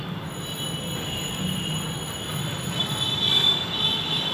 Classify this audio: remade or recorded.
recorded